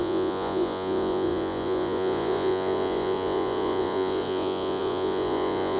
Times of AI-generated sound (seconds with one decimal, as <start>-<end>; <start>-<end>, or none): 0.0-5.8